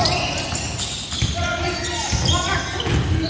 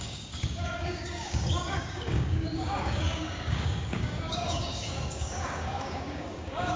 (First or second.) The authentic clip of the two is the first